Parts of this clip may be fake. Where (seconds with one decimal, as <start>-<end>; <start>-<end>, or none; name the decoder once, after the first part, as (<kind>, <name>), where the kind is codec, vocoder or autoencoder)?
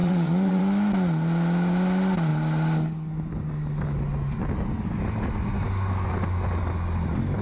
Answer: 0.0-0.6 (vocoder, WaveNeXt)